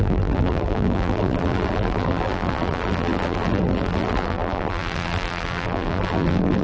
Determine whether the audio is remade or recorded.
remade